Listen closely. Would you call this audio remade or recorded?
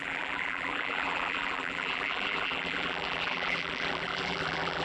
remade